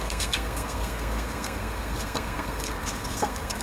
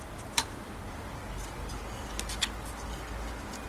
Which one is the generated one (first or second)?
first